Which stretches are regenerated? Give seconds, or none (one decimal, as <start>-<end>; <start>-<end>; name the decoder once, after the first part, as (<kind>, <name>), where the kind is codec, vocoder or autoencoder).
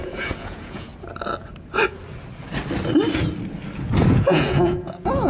0.0-0.9 (vocoder, Vocos); 4.1-5.3